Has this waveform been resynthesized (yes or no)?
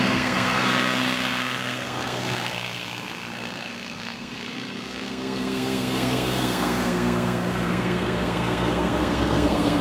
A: yes